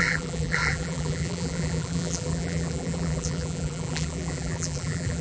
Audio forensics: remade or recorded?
remade